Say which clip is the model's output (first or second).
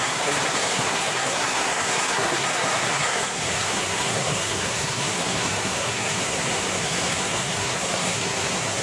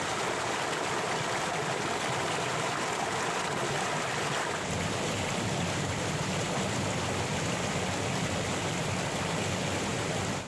first